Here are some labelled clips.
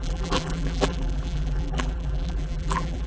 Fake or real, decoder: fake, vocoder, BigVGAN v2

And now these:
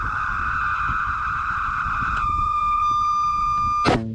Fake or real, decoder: real